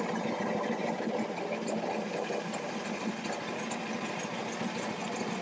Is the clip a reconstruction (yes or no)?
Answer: no